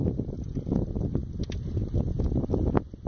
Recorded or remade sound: recorded